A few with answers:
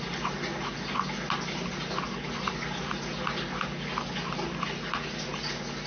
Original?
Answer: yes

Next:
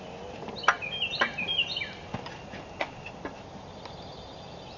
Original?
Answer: yes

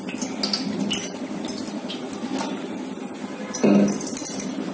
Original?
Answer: yes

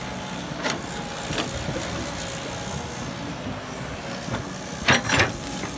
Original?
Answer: yes